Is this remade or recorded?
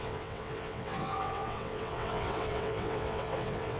remade